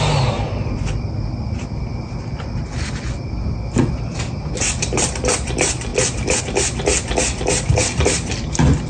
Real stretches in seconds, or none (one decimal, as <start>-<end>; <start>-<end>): 0.0-8.9